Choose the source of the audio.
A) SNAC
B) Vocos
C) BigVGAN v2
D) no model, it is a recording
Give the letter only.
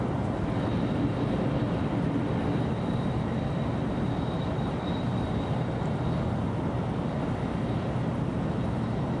D